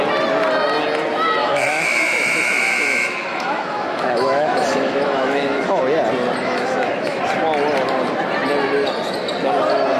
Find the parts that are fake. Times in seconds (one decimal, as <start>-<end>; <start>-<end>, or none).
1.4-5.8; 6.4-7.2